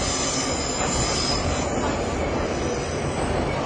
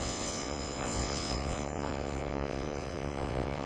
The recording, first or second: first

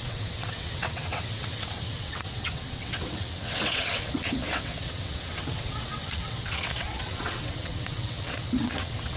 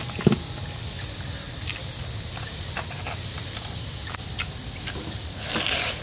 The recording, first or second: second